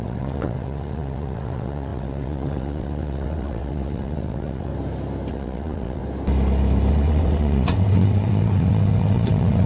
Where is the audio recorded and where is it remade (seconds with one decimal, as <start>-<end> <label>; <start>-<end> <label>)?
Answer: 0.0-4.7 remade; 4.7-5.3 recorded; 5.3-6.0 remade; 6.0-6.9 recorded; 6.9-9.7 remade